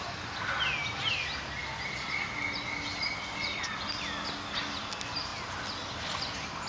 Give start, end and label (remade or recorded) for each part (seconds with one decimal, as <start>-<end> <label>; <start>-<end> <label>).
0.0-6.7 recorded